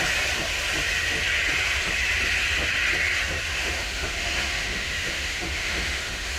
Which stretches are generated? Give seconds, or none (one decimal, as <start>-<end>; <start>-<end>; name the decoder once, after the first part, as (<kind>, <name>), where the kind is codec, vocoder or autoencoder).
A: 3.5-6.4 (autoencoder, DAC-VAE)